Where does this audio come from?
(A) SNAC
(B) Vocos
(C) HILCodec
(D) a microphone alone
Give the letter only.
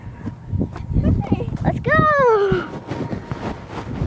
D